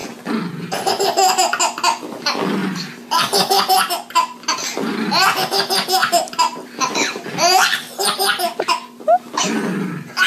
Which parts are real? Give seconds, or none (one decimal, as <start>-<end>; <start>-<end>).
0.0-6.0; 6.7-10.3